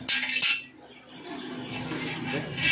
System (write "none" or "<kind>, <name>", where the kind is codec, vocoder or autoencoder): none